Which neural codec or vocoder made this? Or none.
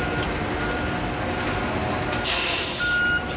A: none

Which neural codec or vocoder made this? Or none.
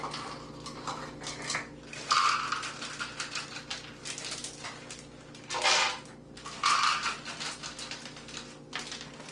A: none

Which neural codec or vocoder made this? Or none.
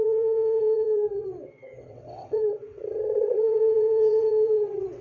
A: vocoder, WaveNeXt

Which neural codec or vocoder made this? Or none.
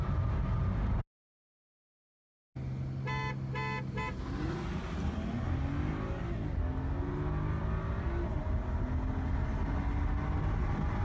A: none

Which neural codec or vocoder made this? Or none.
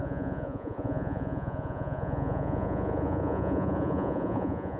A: vocoder, Vocos